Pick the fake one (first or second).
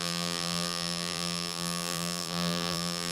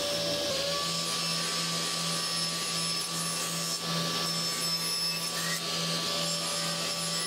first